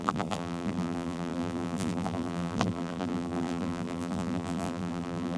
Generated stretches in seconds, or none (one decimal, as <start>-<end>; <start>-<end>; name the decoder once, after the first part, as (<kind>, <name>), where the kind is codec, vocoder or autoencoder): 0.0-5.4 (vocoder, BigVGAN v2)